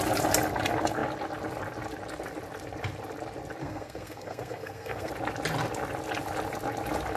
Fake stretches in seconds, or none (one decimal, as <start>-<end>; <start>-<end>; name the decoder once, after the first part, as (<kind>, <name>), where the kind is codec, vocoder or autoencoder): 3.6-5.1 (codec, SNAC)